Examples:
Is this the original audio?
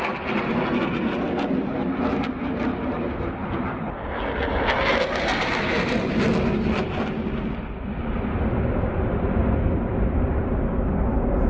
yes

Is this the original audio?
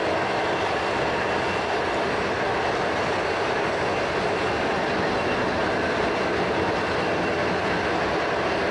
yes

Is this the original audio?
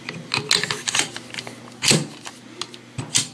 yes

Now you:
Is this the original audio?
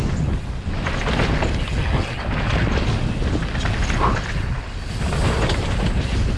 yes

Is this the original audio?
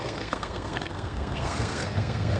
no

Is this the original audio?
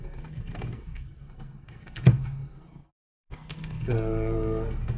no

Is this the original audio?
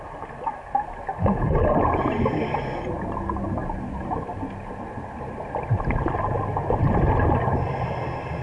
yes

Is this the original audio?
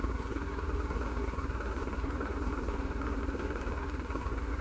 no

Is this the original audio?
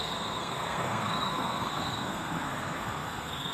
no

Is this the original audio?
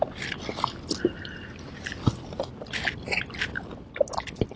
yes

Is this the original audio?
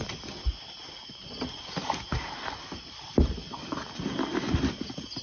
yes